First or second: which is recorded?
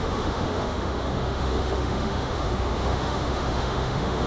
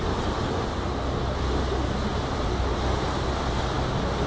second